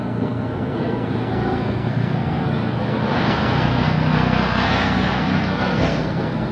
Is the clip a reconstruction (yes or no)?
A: yes